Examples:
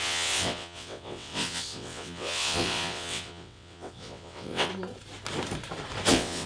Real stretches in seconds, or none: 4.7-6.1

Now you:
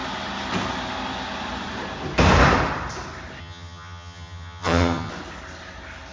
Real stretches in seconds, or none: 0.0-3.4; 5.1-6.1

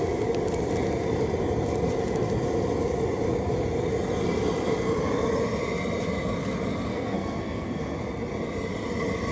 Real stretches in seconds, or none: 0.0-6.9; 8.0-9.3

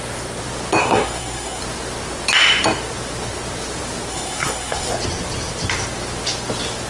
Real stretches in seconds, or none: 0.0-0.8; 1.6-4.1; 4.9-6.9

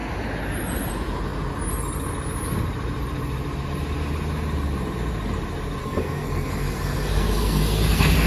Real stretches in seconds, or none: 0.0-5.8

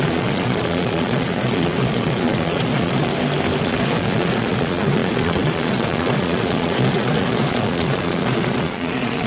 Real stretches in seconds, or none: 3.1-3.6

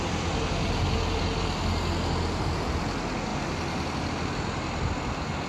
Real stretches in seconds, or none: 0.0-5.5